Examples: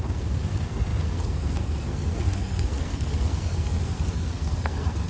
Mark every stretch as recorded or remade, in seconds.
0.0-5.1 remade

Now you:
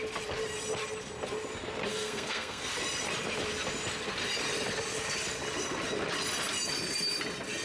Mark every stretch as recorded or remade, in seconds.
0.0-1.9 recorded; 1.9-2.7 remade; 2.7-7.6 recorded

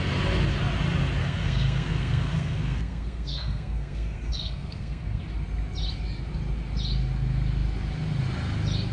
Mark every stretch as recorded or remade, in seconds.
0.0-1.2 recorded; 1.2-5.2 remade; 5.2-8.9 recorded

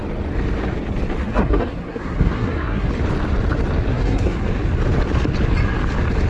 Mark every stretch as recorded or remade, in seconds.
0.0-1.2 recorded; 1.2-2.9 remade; 2.9-3.9 recorded; 3.9-4.4 remade; 4.4-6.3 recorded

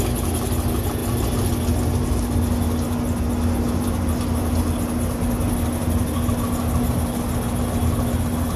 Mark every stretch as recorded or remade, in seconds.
0.0-8.6 recorded